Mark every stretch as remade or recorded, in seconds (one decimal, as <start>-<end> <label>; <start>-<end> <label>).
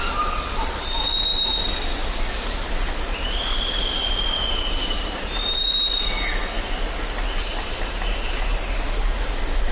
0.0-9.7 recorded